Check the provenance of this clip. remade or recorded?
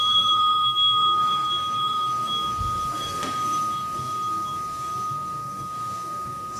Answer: remade